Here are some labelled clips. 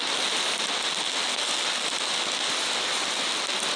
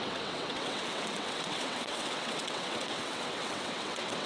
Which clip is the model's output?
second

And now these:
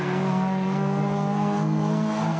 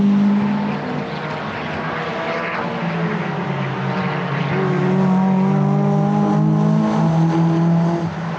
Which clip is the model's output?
first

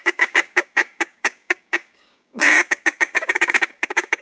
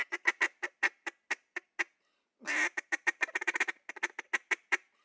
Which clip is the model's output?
first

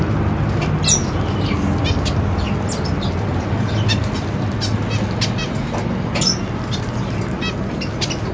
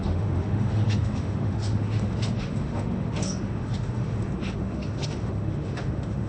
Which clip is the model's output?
second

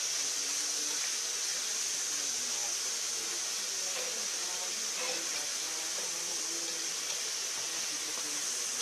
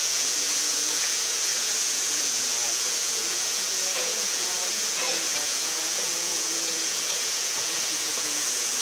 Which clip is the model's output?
second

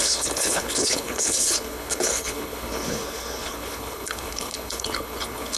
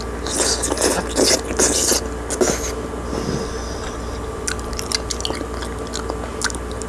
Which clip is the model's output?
first